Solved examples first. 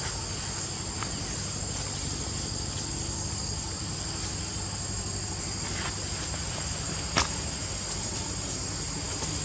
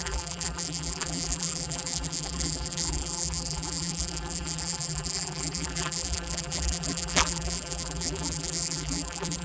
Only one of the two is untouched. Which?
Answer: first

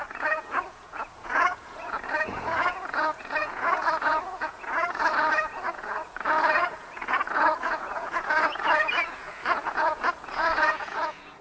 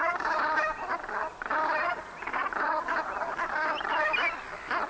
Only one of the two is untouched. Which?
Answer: second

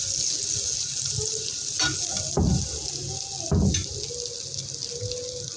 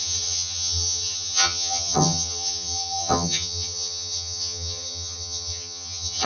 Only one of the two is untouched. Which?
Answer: first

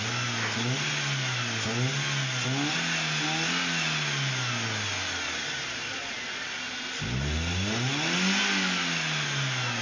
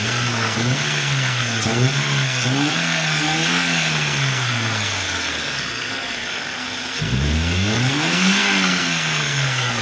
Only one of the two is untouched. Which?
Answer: first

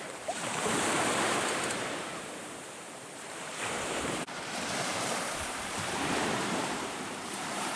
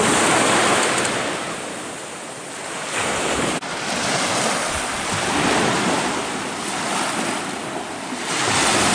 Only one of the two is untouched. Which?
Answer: second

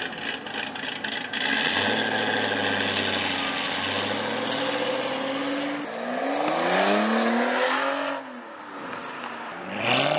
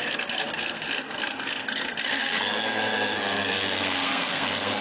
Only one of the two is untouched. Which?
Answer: first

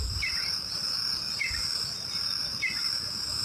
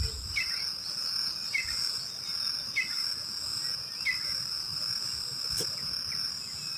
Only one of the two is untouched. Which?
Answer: second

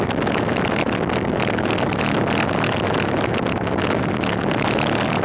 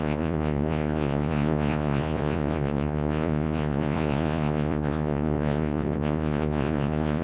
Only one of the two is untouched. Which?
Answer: first